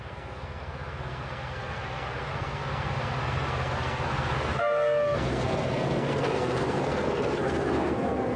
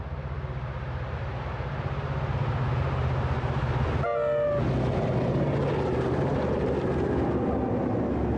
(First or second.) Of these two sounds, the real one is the second